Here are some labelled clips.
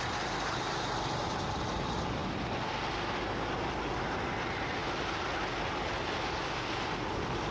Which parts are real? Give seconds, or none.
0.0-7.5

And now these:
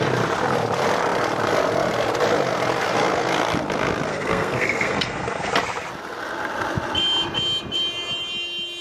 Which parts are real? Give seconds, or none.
0.0-4.1; 5.5-8.8